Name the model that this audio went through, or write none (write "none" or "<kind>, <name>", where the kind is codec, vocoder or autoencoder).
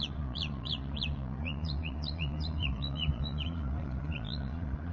vocoder, Vocos